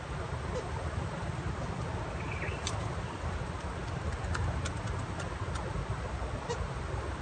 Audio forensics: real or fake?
real